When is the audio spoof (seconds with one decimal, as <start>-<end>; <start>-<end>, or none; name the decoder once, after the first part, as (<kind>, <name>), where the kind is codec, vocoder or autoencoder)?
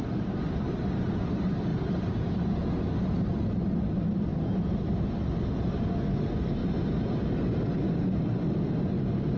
1.7-2.3 (vocoder, BigVGAN v2); 4.3-5.2